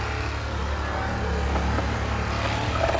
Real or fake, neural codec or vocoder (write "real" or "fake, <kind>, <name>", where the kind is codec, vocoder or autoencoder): real